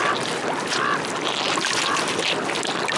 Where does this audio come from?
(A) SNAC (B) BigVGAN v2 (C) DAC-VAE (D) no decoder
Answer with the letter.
D